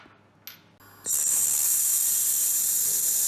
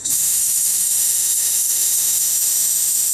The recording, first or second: first